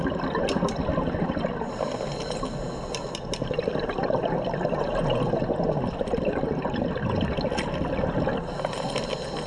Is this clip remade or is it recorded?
recorded